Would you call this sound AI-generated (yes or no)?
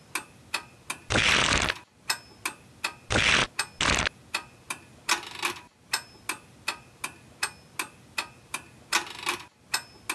no